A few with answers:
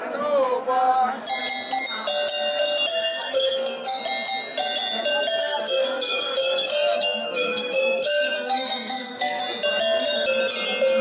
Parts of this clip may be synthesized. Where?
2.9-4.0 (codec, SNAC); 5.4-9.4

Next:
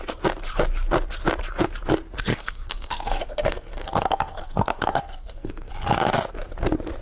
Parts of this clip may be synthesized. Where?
2.3-5.7 (codec, SNAC)

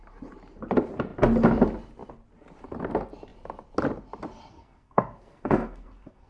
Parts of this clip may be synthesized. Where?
4.5-6.3 (codec, SNAC)

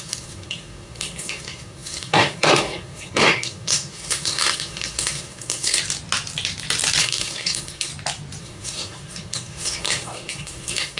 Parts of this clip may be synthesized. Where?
0.0-5.8 (codec, SNAC); 7.0-7.9; 8.4-11.0

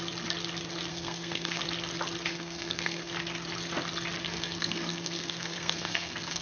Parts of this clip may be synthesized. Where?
0.9-1.6 (codec, SNAC); 2.3-3.1; 4.2-6.4